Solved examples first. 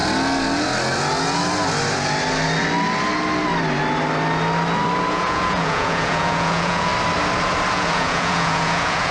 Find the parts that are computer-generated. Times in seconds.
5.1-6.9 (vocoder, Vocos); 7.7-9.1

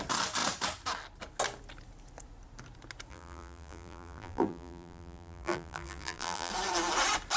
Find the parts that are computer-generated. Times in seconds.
3.1-6.5 (vocoder, BigVGAN v2)

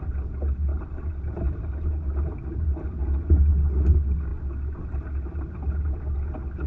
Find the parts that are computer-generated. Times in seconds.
0.7-2.1 (vocoder, BigVGAN v2)

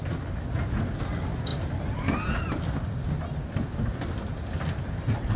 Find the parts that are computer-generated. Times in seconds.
none

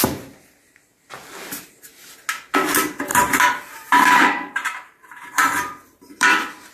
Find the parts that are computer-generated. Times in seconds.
3.1-6.7 (vocoder, BigVGAN v2)

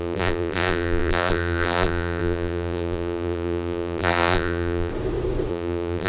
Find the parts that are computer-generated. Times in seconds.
0.0-4.9 (vocoder, BigVGAN v2); 5.5-6.1

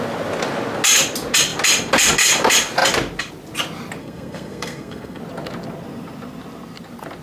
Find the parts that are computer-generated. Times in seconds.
4.0-5.2 (codec, SNAC)